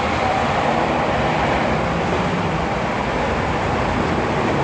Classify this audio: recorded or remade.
remade